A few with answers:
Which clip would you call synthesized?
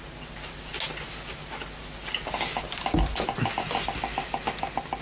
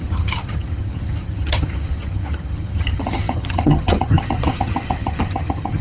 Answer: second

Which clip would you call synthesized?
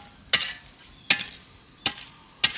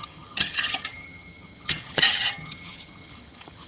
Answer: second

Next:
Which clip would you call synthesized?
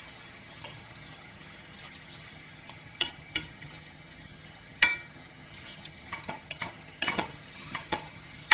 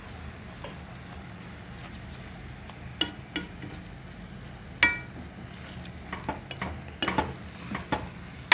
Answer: first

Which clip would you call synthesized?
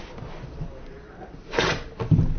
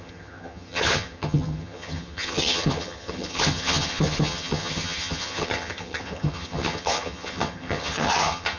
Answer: second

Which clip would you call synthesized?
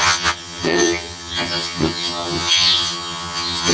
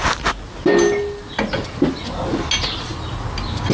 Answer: first